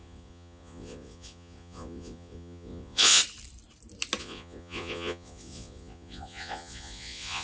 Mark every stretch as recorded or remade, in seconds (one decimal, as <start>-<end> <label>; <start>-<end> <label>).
0.0-3.2 remade; 3.2-4.2 recorded; 4.2-7.4 remade

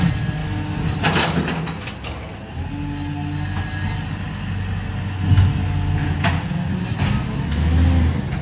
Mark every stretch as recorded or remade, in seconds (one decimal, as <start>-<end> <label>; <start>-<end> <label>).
0.0-6.0 recorded; 6.0-6.6 remade; 6.6-8.4 recorded

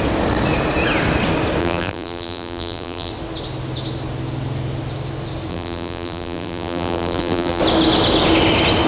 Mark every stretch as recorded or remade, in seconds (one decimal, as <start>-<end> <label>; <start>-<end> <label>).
0.0-1.6 recorded; 1.6-3.1 remade; 3.1-5.5 recorded; 5.5-7.6 remade; 7.6-8.9 recorded

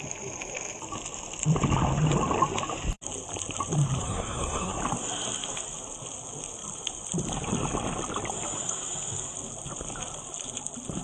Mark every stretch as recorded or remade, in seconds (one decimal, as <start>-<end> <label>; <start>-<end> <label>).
0.0-4.0 recorded; 4.0-4.8 remade; 4.8-11.0 recorded

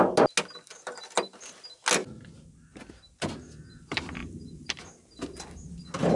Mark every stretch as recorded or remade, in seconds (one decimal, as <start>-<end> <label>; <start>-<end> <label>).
0.0-4.2 recorded; 4.2-4.8 remade; 4.8-6.2 recorded

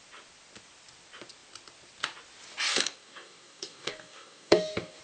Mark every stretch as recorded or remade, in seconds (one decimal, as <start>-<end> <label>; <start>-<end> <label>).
0.0-2.7 recorded; 2.7-5.0 remade